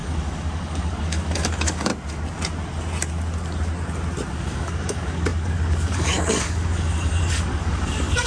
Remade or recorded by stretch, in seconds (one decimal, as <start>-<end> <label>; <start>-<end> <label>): 0.0-1.9 remade; 1.9-4.4 recorded; 4.4-8.3 remade